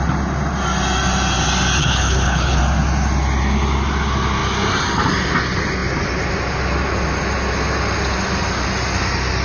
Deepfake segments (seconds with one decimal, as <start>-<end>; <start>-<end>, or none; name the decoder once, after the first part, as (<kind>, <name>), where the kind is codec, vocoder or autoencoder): 1.8-2.6 (codec, HILCodec)